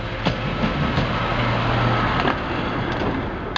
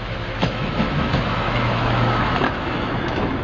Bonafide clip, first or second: first